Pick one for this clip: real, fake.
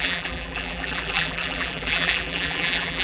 fake